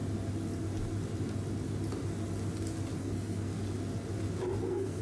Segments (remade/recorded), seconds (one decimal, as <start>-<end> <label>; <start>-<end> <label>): 0.0-3.0 recorded; 3.0-3.5 remade; 3.5-4.6 recorded; 4.6-5.0 remade